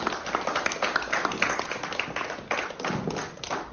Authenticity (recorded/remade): recorded